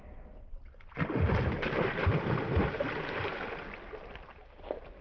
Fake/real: real